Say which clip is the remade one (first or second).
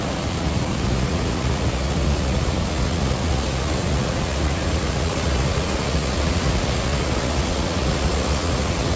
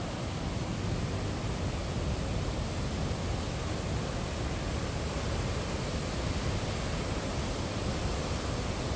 first